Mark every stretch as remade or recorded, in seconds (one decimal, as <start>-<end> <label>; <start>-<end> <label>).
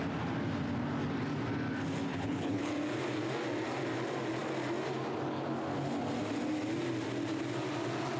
0.0-2.1 recorded; 2.1-2.7 remade; 2.7-8.2 recorded